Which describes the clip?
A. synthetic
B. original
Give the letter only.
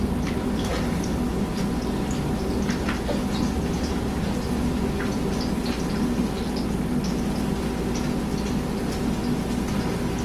B